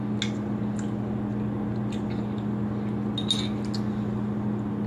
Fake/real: real